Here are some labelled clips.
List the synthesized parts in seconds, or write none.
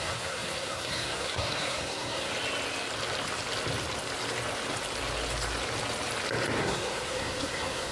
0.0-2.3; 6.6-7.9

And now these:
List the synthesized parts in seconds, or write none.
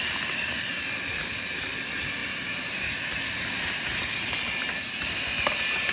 none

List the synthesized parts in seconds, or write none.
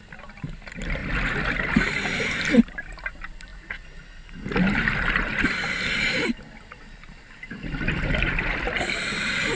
none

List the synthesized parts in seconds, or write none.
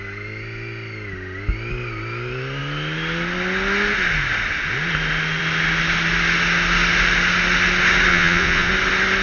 8.1-8.7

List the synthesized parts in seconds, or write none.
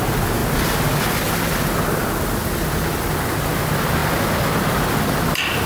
none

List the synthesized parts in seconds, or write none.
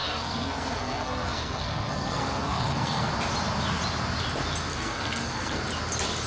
0.0-3.1; 4.7-5.6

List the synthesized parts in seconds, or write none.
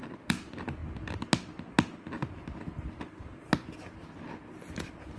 none